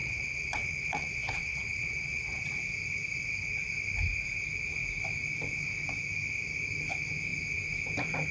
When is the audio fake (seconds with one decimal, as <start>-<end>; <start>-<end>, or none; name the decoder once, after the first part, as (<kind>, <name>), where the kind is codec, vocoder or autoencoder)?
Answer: 0.0-2.4 (vocoder, WaveNeXt)